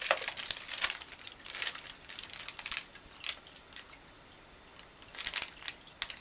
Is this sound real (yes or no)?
yes